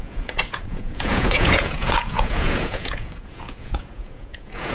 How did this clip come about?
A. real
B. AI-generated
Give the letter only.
B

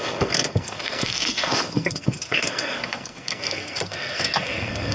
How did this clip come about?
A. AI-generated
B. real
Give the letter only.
A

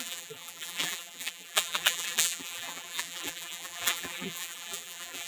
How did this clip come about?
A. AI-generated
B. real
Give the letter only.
A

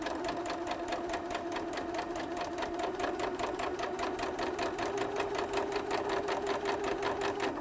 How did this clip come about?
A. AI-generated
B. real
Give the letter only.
B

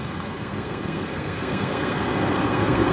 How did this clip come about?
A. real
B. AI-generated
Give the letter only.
B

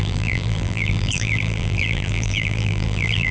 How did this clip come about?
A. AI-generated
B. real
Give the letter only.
A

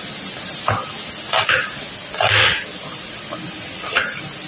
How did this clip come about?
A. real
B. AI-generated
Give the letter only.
A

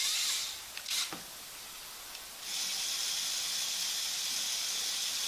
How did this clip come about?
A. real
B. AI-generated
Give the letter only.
A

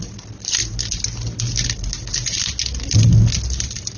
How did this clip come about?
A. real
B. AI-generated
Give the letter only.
A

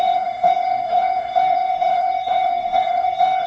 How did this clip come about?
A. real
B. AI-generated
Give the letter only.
B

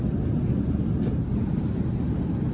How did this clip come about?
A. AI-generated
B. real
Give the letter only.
B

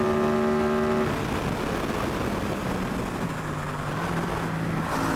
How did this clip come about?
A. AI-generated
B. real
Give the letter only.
B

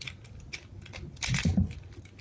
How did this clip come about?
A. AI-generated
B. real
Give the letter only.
B